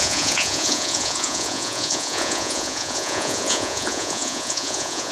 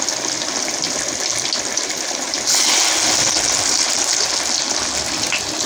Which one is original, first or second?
second